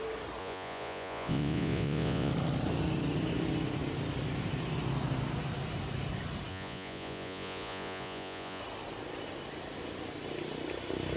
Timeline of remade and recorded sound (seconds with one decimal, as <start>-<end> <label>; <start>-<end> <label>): 0.0-0.4 recorded; 0.4-2.3 remade; 2.3-6.5 recorded; 6.5-8.6 remade; 8.6-11.2 recorded